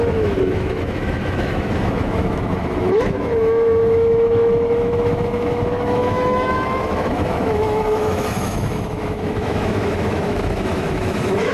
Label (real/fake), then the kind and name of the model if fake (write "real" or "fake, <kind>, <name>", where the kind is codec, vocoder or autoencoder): fake, autoencoder, DAC-VAE